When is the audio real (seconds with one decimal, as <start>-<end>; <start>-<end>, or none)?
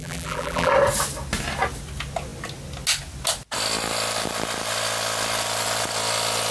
0.7-6.5